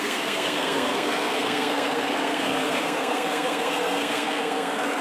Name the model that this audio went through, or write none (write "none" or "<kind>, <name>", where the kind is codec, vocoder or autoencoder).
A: codec, SNAC